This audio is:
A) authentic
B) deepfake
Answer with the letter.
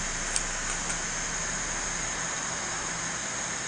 A